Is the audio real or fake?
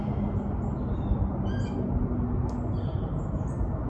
real